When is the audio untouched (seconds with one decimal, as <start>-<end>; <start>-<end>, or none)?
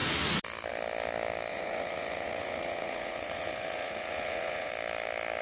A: 0.0-1.5; 4.7-5.4